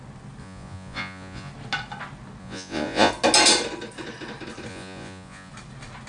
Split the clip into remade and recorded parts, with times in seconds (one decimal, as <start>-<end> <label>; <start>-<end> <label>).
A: 0.0-0.4 recorded; 0.4-1.5 remade; 1.5-2.4 recorded; 2.4-3.1 remade; 3.1-4.7 recorded; 4.7-5.5 remade; 5.5-6.1 recorded